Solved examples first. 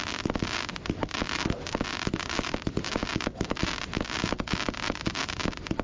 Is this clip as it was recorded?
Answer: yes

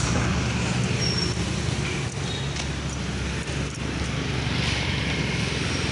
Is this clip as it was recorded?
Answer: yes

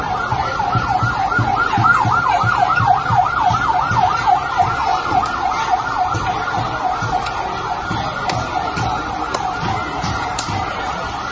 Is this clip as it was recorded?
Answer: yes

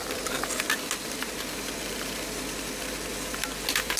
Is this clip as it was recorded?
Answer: yes